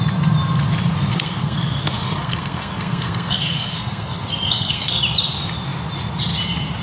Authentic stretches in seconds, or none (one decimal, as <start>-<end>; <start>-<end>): 0.0-1.1; 5.0-6.8